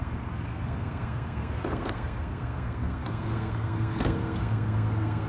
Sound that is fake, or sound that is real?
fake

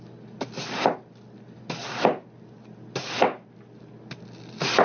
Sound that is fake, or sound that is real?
real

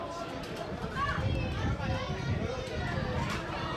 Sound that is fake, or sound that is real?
real